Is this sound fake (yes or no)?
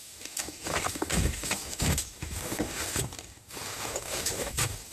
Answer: yes